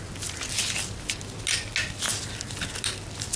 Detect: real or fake real